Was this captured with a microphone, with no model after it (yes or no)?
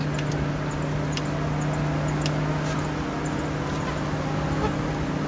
yes